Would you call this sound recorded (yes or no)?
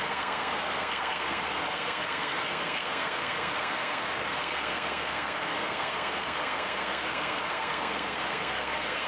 no